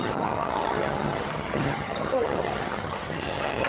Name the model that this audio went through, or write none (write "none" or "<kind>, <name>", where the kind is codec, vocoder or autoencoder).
vocoder, HiFi-GAN